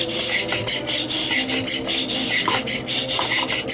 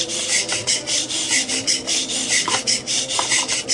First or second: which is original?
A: first